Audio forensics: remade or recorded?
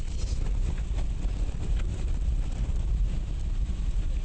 remade